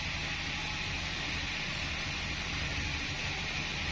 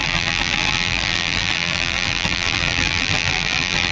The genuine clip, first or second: first